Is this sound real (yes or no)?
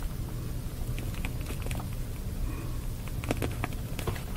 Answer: yes